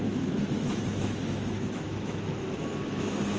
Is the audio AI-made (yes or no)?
yes